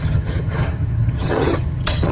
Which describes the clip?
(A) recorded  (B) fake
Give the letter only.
B